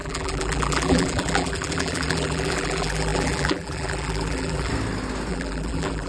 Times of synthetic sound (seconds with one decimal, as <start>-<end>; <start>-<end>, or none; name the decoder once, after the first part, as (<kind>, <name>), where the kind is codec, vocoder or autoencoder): 0.0-4.7 (vocoder, BigVGAN v2); 5.3-6.1